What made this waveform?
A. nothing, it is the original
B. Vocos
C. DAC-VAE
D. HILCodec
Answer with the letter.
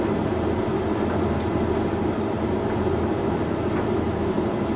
A